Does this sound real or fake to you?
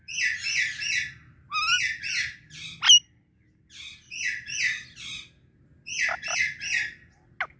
real